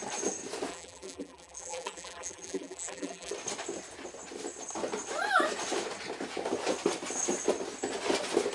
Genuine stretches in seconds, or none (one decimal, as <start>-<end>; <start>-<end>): 0.0-0.7; 3.3-8.5